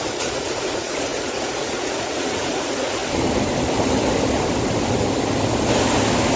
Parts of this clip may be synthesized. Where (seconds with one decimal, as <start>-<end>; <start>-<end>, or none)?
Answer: 0.0-3.0